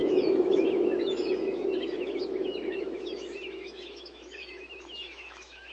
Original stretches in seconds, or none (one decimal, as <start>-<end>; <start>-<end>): none